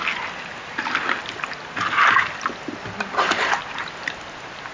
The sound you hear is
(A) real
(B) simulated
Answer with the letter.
A